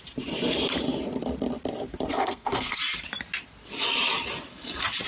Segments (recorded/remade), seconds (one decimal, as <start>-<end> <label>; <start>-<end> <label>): 0.0-2.1 recorded; 2.1-2.8 remade; 2.8-5.1 recorded